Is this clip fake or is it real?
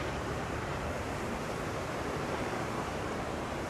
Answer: fake